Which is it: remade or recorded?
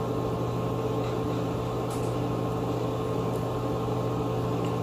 recorded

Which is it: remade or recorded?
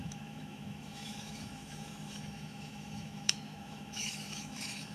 remade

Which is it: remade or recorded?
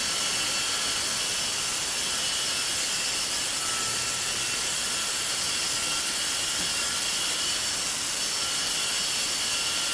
recorded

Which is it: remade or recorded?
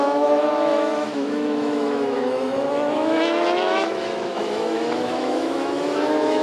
remade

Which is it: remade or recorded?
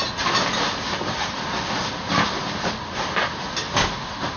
recorded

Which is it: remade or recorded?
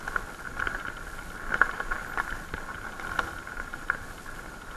recorded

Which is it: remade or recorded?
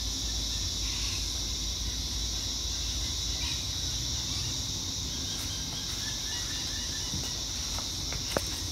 recorded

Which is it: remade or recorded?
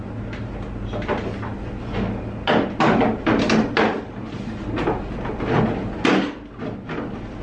recorded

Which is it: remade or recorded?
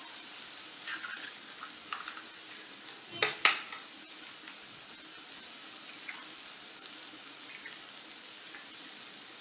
recorded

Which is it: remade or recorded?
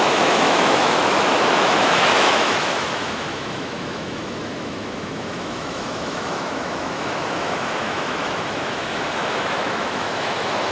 remade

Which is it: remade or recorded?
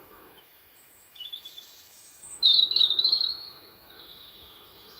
remade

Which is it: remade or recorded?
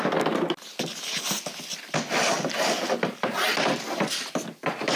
recorded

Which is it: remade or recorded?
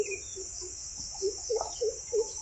remade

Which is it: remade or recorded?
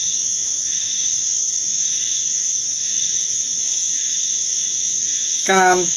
remade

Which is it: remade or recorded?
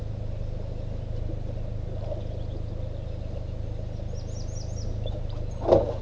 recorded